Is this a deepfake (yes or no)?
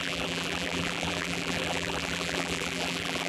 yes